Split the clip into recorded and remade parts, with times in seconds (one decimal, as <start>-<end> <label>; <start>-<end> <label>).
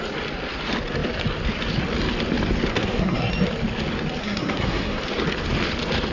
0.0-2.7 recorded; 2.7-3.3 remade; 3.3-4.2 recorded; 4.2-5.0 remade; 5.0-6.1 recorded